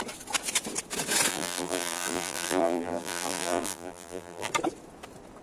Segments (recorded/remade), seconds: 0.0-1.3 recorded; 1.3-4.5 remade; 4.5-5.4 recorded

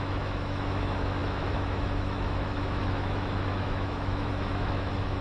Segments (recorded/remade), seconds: 0.0-5.2 remade

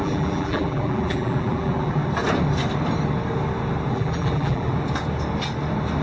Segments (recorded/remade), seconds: 0.0-2.0 remade; 2.0-3.9 recorded; 3.9-4.7 remade; 4.7-6.0 recorded

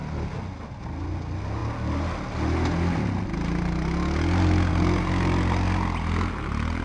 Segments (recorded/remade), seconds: 0.0-6.8 recorded